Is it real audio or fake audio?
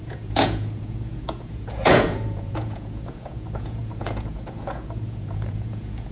fake